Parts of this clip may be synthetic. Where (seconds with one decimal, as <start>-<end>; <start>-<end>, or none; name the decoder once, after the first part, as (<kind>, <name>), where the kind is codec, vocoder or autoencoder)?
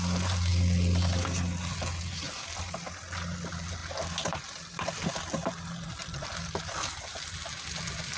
none